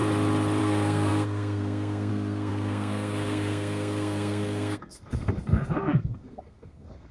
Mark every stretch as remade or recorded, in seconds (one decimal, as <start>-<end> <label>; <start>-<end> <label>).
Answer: 0.0-0.6 recorded; 0.6-7.1 remade